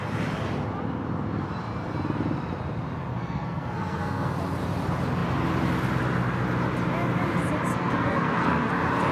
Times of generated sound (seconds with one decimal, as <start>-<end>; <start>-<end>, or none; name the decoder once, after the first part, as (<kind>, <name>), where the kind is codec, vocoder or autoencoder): 3.1-4.3 (codec, SNAC); 7.7-8.7